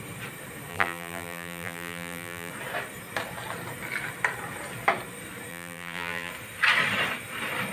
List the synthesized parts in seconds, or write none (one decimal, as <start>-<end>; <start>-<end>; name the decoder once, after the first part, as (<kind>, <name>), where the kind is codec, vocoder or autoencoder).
0.7-2.5 (vocoder, BigVGAN v2); 5.5-6.3